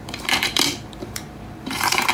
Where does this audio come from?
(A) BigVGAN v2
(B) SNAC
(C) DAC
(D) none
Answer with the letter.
A